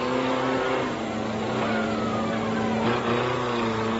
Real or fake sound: real